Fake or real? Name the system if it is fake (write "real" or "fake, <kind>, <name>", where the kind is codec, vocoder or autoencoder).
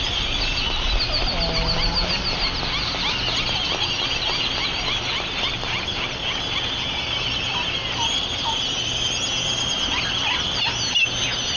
real